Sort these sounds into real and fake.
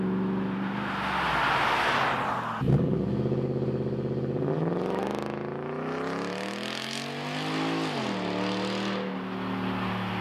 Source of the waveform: real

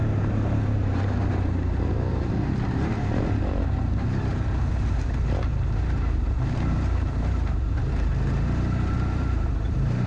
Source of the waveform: fake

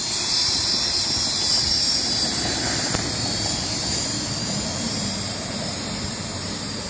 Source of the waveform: fake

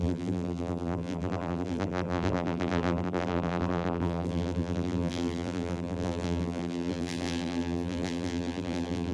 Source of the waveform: fake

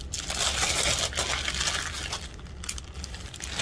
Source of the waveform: real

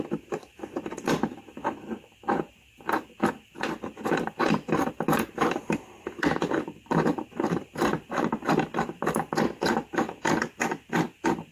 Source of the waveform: fake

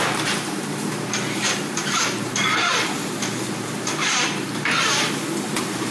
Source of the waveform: fake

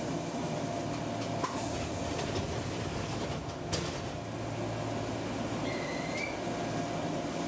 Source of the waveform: real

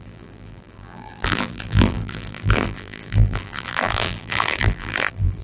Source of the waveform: fake